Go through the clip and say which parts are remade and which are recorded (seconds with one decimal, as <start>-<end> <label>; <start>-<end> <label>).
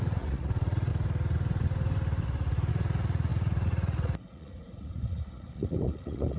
0.0-0.9 remade; 0.9-2.7 recorded; 2.7-6.4 remade